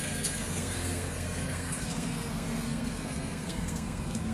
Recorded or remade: remade